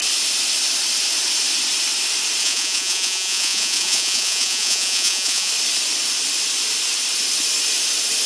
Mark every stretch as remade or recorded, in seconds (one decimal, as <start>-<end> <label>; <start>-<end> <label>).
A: 0.0-2.4 recorded; 2.4-5.5 remade; 5.5-8.3 recorded